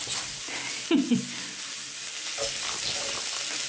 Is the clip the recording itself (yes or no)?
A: yes